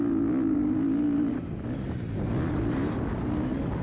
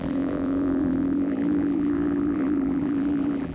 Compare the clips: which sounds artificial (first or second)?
second